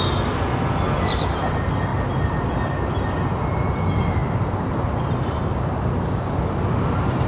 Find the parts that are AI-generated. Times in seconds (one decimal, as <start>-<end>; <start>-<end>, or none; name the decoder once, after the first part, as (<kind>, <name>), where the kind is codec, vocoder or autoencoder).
none